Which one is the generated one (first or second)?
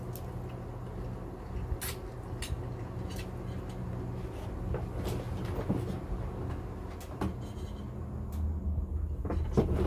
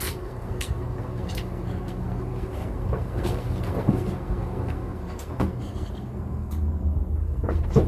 second